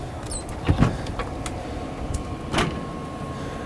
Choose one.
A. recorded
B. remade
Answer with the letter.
A